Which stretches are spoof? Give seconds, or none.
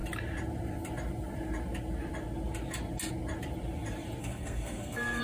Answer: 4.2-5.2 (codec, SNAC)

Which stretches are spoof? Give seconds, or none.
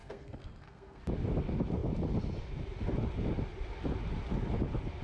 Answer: 0.0-1.0 (codec, SNAC)